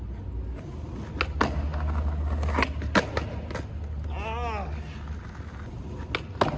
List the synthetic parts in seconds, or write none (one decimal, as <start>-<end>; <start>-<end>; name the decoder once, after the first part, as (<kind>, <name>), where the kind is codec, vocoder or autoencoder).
none